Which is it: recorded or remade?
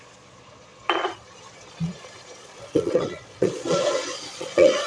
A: remade